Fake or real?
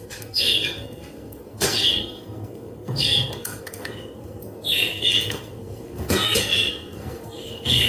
fake